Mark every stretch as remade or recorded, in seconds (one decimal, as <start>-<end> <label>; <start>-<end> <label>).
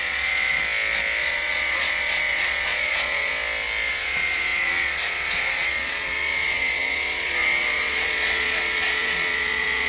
0.0-0.6 remade; 0.6-1.2 recorded; 1.2-3.3 remade; 3.3-3.9 recorded; 3.9-9.9 remade